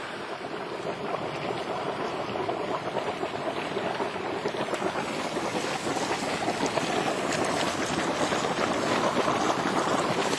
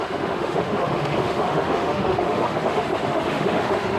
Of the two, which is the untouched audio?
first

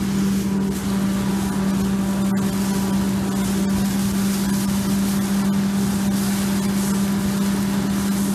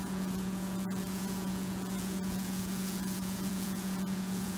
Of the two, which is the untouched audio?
first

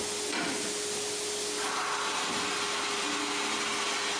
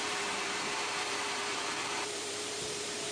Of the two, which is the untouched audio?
first